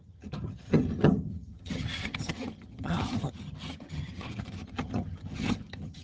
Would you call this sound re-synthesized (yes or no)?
yes